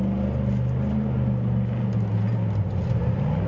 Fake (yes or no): no